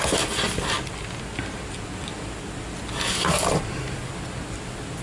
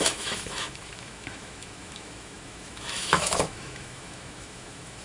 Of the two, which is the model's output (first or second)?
second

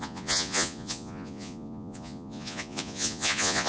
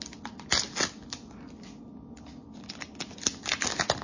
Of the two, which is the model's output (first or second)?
first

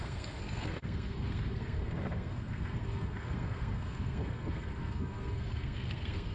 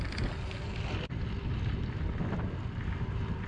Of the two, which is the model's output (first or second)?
first